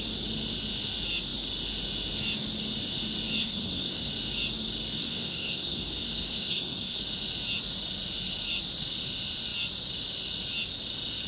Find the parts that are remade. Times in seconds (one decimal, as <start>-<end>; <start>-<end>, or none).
3.4-4.1; 5.0-7.0